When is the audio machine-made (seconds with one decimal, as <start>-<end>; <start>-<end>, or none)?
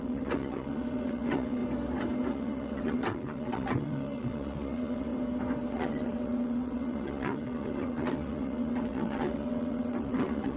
0.0-1.6; 2.3-5.1; 5.7-10.6